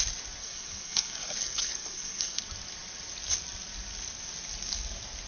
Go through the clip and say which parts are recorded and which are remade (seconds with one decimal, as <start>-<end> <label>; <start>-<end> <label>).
0.0-0.4 recorded; 0.4-2.4 remade; 2.4-5.3 recorded